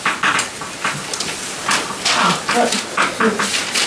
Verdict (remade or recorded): recorded